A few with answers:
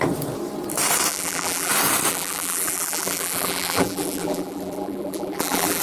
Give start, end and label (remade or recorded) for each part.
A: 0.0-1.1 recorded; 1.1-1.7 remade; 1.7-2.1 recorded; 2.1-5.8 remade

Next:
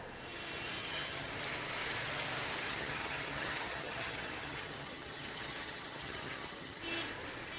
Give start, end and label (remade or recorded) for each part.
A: 0.0-0.8 recorded; 0.8-1.3 remade; 1.3-2.7 recorded; 2.7-6.8 remade; 6.8-7.6 recorded

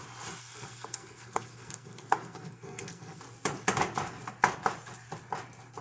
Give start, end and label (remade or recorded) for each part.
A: 0.0-0.4 recorded; 0.4-3.2 remade; 3.2-5.8 recorded

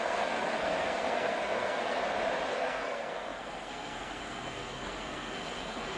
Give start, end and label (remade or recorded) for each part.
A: 0.0-2.0 remade; 2.0-2.5 recorded; 2.5-6.0 remade

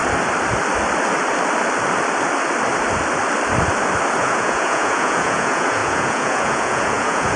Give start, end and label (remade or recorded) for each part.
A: 0.0-4.2 recorded; 4.2-7.4 remade